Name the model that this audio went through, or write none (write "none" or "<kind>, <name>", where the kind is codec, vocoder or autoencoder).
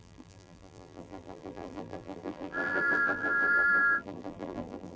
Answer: vocoder, BigVGAN v2